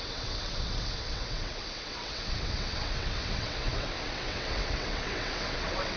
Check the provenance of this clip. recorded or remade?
remade